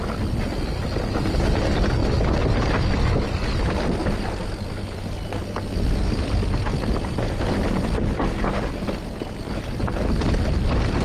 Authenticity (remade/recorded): recorded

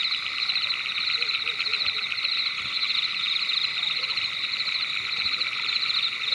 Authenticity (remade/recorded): recorded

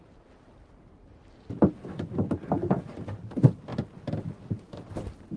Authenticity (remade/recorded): recorded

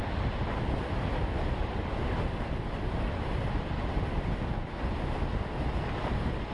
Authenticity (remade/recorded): recorded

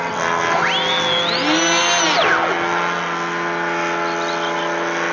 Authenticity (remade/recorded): recorded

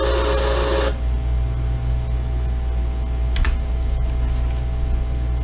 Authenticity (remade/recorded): recorded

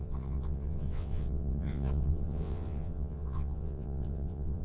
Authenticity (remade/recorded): remade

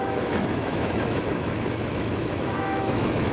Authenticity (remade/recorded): remade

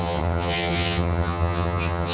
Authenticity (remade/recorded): remade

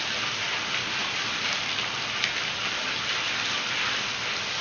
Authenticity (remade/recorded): recorded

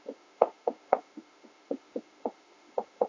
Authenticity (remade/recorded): remade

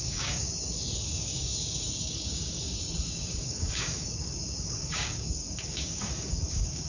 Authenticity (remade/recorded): remade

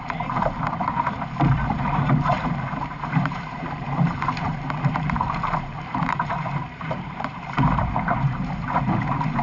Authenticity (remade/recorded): remade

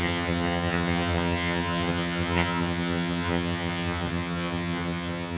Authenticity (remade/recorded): remade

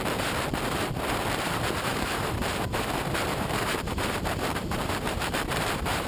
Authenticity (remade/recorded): remade